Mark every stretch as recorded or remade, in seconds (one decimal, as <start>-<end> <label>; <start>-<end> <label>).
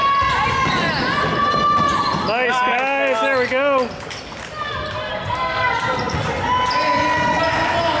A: 0.0-5.1 recorded; 5.1-5.8 remade; 5.8-8.0 recorded